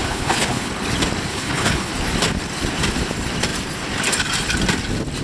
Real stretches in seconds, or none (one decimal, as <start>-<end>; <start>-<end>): 0.7-1.3; 1.9-5.2